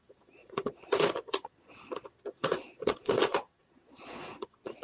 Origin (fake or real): fake